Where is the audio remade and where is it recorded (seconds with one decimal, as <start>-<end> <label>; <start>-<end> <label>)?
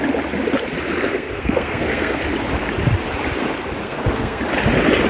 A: 0.0-1.1 recorded; 1.1-2.2 remade; 2.2-3.8 recorded; 3.8-4.4 remade; 4.4-5.1 recorded